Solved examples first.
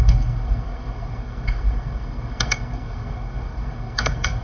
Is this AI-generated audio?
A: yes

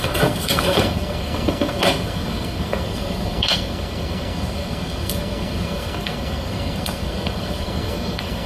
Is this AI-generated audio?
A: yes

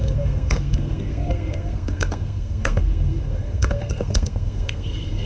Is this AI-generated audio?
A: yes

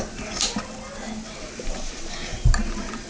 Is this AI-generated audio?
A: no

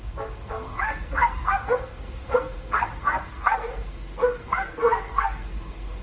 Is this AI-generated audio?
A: yes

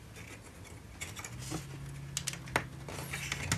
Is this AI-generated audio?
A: no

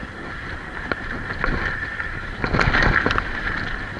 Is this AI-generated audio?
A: no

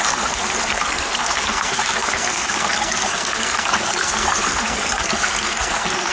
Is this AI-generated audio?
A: yes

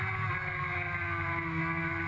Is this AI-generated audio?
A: no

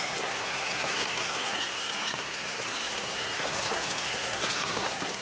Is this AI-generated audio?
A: yes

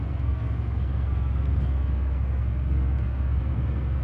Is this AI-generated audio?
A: yes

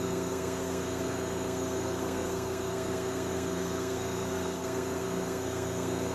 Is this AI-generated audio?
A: yes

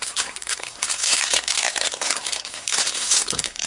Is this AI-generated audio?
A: yes